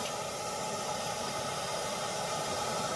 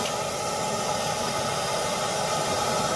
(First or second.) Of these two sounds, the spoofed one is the first